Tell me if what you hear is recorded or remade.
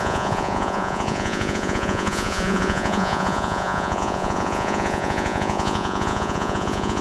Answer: remade